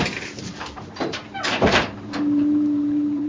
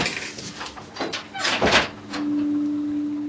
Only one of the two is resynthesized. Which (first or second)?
first